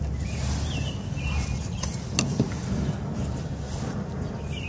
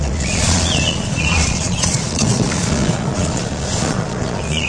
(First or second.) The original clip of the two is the first